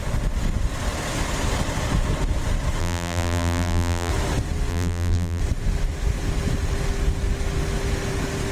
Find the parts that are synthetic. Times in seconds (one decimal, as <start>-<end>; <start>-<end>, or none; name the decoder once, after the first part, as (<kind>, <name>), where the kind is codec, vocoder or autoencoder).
2.8-4.1 (vocoder, BigVGAN v2); 4.7-5.4